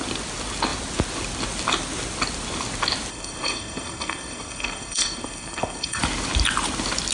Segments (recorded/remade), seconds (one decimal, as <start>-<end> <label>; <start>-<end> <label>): 0.0-3.1 recorded; 3.1-6.0 remade; 6.0-7.1 recorded